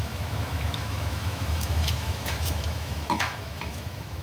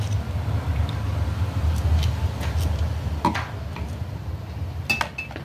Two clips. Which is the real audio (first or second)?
second